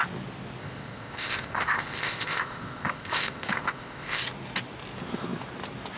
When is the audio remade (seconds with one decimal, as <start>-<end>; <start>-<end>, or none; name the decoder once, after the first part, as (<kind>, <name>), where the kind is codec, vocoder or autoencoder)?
0.6-4.2 (codec, ZipCodec)